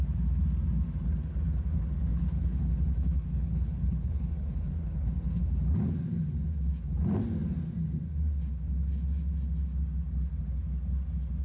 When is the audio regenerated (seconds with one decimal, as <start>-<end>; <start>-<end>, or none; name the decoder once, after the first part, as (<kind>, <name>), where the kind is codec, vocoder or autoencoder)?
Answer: 2.1-5.4 (codec, HILCodec)